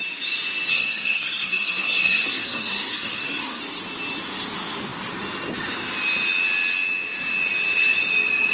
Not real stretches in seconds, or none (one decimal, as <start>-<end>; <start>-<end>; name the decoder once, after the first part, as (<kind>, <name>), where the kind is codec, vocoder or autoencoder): 0.7-3.6 (codec, SNAC)